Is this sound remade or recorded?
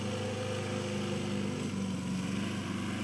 recorded